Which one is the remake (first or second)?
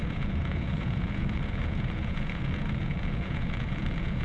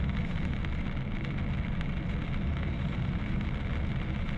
first